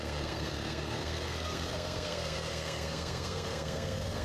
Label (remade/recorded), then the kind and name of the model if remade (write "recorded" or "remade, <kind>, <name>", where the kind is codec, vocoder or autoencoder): remade, codec, SNAC